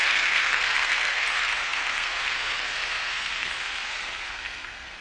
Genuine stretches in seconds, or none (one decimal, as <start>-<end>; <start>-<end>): none